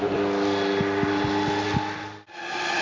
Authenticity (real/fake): real